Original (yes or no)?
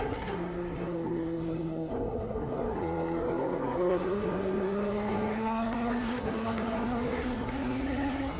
no